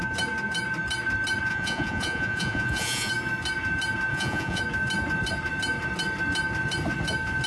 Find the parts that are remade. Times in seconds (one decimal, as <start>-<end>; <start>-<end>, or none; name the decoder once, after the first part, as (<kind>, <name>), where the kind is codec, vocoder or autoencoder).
1.5-3.1 (vocoder, Vocos); 4.1-4.6